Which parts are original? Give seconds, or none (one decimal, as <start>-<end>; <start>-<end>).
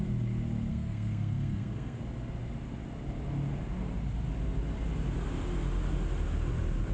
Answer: 0.0-0.7; 2.0-6.9